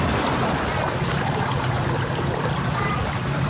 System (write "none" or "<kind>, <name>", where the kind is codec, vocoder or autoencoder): none